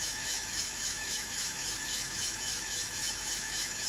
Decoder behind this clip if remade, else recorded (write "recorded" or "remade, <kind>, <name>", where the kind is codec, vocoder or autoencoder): remade, autoencoder, DAC-VAE